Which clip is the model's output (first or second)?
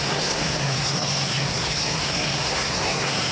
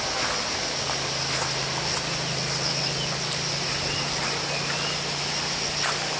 first